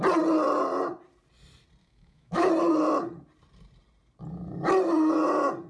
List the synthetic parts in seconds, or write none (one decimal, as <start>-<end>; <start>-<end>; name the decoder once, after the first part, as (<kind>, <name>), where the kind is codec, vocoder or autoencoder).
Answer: 1.8-2.5 (autoencoder, DAC-VAE)